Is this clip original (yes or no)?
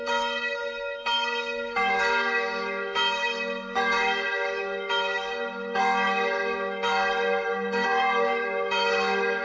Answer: no